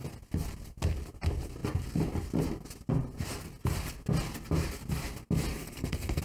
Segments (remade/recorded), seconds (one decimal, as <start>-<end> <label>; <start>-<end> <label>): 0.0-5.5 recorded; 5.5-6.2 remade